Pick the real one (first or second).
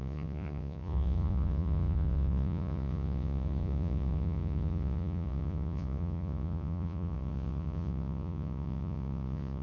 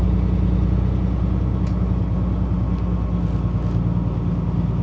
second